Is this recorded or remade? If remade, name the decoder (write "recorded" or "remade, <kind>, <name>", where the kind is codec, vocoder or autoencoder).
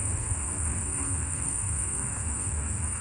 remade, codec, SNAC